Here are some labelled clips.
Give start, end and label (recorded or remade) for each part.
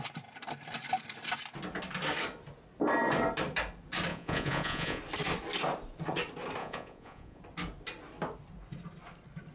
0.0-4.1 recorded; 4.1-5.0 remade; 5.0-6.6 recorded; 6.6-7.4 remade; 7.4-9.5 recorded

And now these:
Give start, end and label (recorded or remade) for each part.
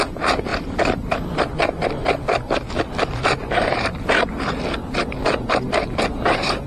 0.0-0.5 recorded; 0.5-1.4 remade; 1.4-2.0 recorded; 2.0-6.0 remade; 6.0-6.7 recorded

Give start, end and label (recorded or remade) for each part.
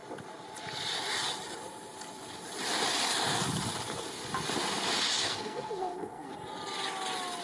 0.0-5.2 recorded; 5.2-6.3 remade; 6.3-7.4 recorded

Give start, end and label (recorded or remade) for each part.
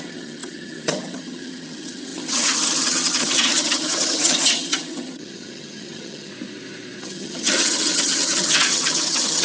0.0-6.3 remade; 6.3-7.0 recorded; 7.0-9.4 remade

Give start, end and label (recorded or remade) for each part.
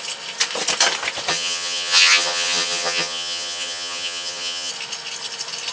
0.0-1.3 recorded; 1.3-4.7 remade; 4.7-5.7 recorded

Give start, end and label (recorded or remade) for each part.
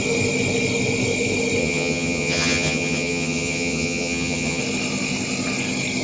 0.0-1.6 recorded; 1.6-4.6 remade; 4.6-6.0 recorded